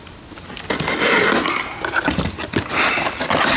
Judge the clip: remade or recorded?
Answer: recorded